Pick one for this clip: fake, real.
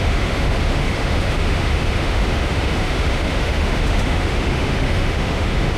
fake